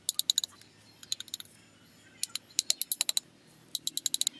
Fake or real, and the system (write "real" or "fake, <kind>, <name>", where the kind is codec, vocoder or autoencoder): real